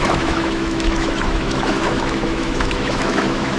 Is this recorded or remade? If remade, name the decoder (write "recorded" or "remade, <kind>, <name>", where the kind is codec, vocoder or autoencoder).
remade, autoencoder, DAC-VAE